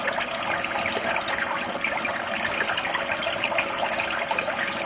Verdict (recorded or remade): recorded